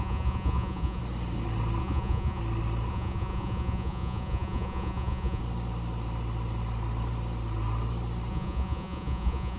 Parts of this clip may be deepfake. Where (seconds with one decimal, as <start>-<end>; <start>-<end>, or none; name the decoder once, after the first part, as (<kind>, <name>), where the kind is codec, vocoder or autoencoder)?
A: 0.0-1.0 (vocoder, Vocos); 1.8-2.4; 2.9-5.4; 8.3-9.6